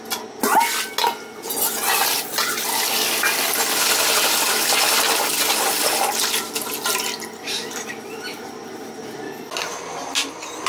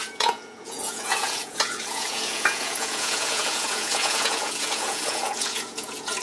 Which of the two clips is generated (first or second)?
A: second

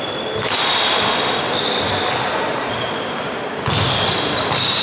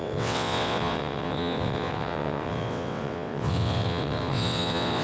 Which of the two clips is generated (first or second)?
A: second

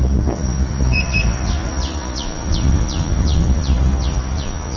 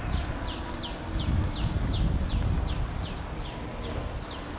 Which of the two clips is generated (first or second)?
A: first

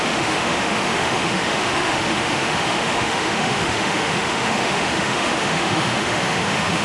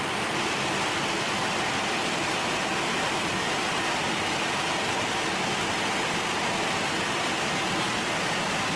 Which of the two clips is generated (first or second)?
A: first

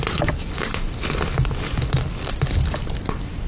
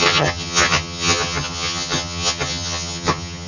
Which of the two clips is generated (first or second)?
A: second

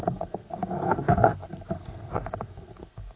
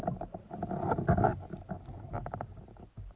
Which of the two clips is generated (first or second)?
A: first